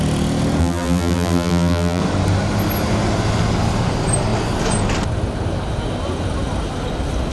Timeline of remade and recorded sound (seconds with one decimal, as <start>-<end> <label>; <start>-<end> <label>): 0.0-0.6 recorded; 0.6-2.0 remade; 2.0-7.3 recorded